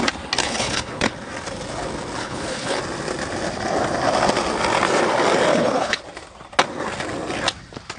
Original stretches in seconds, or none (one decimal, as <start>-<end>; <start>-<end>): 0.0-0.4; 1.1-2.2; 2.8-5.5; 6.0-8.0